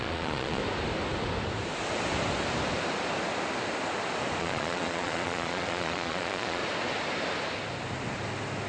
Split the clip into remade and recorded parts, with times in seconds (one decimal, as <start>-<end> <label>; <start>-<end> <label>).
0.0-0.6 remade; 0.6-4.4 recorded; 4.4-6.6 remade; 6.6-8.7 recorded